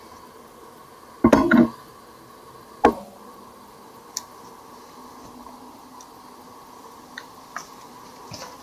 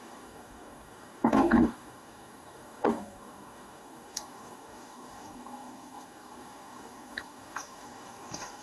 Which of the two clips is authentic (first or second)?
first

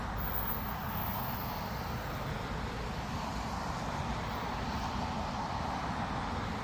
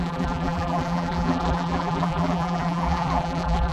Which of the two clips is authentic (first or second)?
first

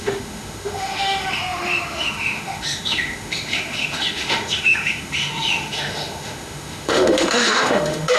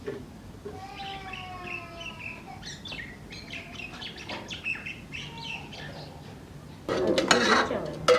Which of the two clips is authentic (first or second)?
second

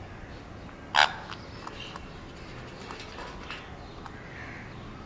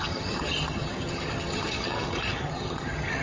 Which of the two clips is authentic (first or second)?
first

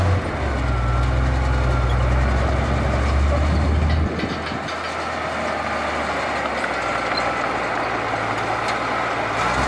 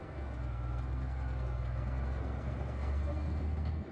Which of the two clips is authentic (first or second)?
first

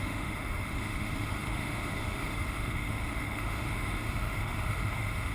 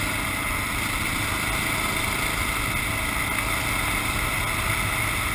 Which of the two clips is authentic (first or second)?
second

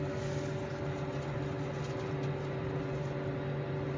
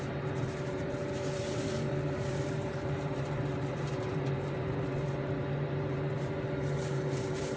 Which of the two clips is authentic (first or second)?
first